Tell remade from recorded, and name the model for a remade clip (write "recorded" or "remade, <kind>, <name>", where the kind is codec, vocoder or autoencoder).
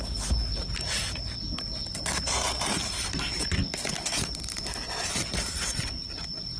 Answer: recorded